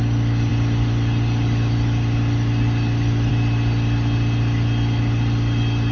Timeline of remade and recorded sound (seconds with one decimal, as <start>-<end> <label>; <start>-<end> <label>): 0.0-0.5 recorded; 0.5-3.3 remade; 3.3-5.9 recorded